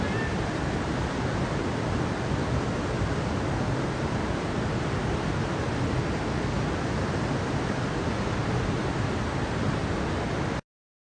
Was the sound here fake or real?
real